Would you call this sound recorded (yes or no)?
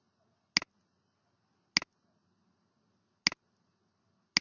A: yes